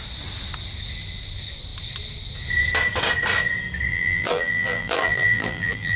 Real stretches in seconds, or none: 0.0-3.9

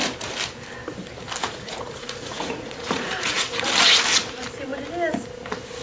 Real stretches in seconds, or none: 0.0-1.4; 3.7-5.8

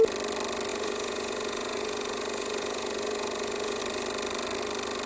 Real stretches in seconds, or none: 0.0-0.7; 3.8-5.1

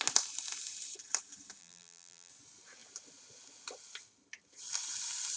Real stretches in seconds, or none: 0.0-1.6; 2.3-5.4

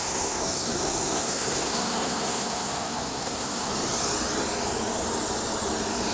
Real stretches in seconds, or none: 3.7-6.1

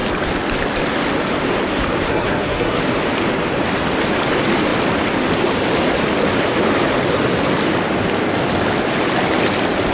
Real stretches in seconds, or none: 0.0-2.1; 2.8-9.9